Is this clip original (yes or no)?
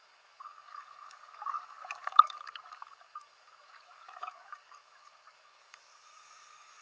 no